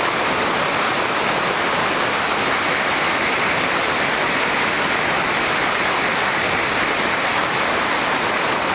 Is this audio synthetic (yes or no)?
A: no